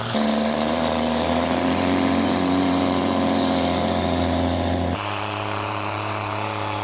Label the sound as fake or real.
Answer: fake